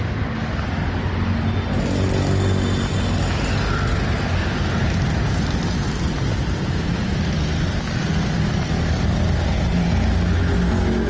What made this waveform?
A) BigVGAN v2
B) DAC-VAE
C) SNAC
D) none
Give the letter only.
D